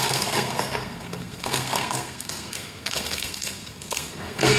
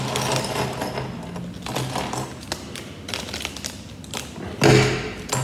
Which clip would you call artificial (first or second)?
first